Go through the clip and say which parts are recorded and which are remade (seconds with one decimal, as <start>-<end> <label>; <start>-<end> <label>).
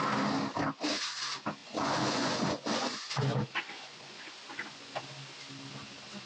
0.0-1.6 recorded; 1.6-5.0 remade; 5.0-6.3 recorded